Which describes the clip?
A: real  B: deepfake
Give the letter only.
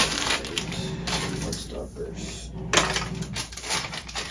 A